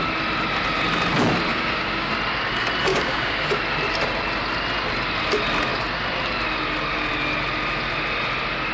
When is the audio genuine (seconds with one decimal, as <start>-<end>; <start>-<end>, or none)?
0.0-1.5; 2.1-2.9; 3.6-8.7